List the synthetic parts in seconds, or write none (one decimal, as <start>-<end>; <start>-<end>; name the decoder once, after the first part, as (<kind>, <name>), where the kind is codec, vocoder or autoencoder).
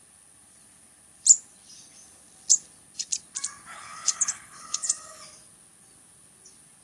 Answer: 3.7-5.2 (codec, HILCodec)